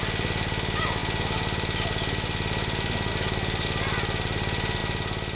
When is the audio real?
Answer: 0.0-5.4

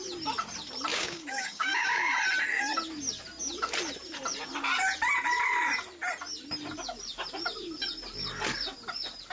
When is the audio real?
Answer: 0.0-0.9; 2.1-9.3